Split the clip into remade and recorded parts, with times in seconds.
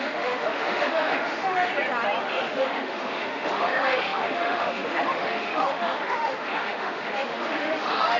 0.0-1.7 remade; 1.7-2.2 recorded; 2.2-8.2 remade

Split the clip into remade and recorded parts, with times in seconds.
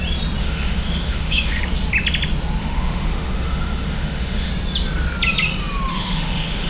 0.0-0.4 recorded; 0.4-1.6 remade; 1.6-2.6 recorded; 2.6-4.5 remade; 4.5-5.9 recorded; 5.9-6.7 remade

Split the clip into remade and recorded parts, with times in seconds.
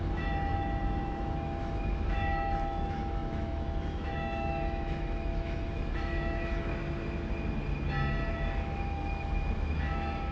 0.0-6.7 remade; 6.7-8.3 recorded; 8.3-10.3 remade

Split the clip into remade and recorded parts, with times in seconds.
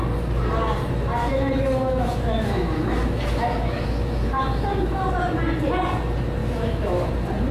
0.0-1.3 recorded; 1.3-5.0 remade; 5.0-6.4 recorded; 6.4-7.1 remade; 7.1-7.5 recorded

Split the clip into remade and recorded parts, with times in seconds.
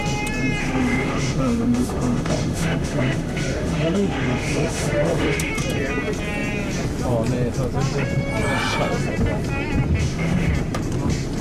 0.0-0.6 recorded; 0.6-5.5 remade; 5.5-10.0 recorded; 10.0-10.5 remade; 10.5-11.4 recorded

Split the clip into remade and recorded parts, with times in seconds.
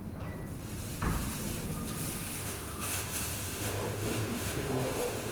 0.0-2.4 recorded; 2.4-5.3 remade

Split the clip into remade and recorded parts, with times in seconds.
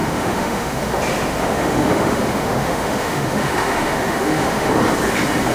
0.0-1.0 remade; 1.0-1.4 recorded; 1.4-4.7 remade; 4.7-5.5 recorded